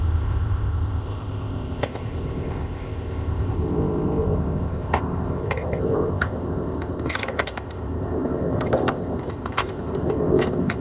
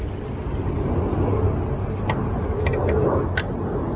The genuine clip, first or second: second